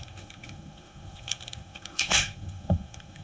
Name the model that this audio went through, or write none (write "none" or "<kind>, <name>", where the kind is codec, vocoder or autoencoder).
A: codec, SNAC